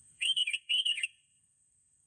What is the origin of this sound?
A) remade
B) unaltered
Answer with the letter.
A